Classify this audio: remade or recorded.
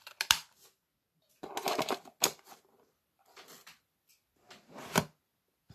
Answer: recorded